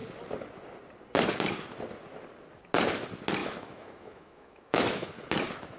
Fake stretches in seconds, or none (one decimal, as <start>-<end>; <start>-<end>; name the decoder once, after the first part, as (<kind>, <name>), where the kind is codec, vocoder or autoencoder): 3.4-5.1 (autoencoder, DAC-VAE)

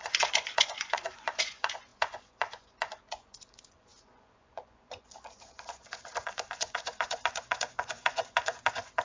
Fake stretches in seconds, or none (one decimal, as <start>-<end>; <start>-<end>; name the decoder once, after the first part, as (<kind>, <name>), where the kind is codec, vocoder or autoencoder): 0.0-9.0 (vocoder, Vocos)

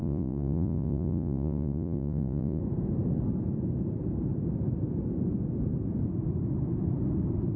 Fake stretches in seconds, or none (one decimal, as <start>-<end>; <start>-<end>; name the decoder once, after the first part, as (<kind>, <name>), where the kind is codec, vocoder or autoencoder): 0.0-2.6 (vocoder, Vocos)

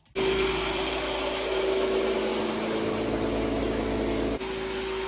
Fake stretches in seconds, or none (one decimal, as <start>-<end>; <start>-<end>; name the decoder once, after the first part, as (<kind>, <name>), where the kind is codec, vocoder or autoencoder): none